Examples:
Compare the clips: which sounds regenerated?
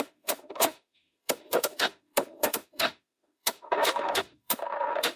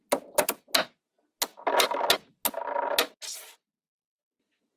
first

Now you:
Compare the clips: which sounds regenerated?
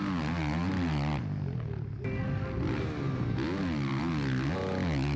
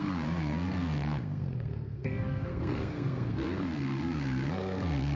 second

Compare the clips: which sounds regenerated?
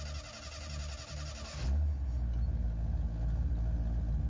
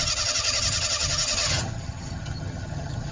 second